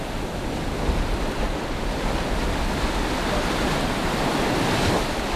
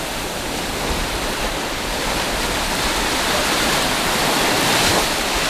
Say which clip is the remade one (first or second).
second